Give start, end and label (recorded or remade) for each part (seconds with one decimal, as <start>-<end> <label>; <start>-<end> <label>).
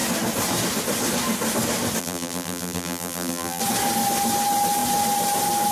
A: 0.0-2.0 recorded; 2.0-3.6 remade; 3.6-5.7 recorded